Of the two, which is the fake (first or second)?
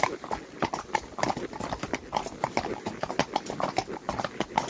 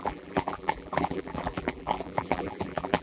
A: second